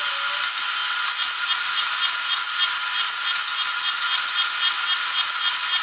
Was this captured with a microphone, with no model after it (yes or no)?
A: yes